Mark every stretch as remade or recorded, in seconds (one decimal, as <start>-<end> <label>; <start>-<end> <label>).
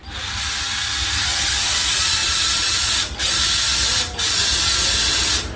0.0-2.2 recorded; 2.2-2.8 remade; 2.8-5.6 recorded